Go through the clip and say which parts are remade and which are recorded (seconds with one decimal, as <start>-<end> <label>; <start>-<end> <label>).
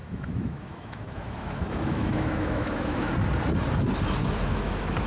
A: 0.0-3.1 remade; 3.1-4.2 recorded; 4.2-5.1 remade